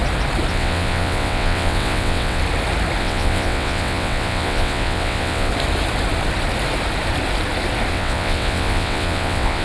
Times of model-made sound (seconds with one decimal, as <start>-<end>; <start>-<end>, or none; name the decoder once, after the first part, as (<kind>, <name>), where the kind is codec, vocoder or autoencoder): 0.5-2.4 (vocoder, WaveNeXt); 3.0-5.5; 7.9-9.6